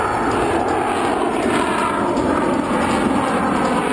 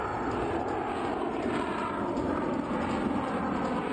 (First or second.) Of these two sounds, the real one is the first